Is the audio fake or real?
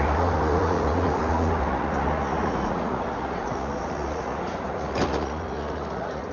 fake